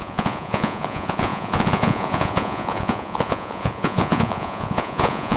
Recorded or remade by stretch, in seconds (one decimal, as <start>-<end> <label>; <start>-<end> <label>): 0.0-5.4 remade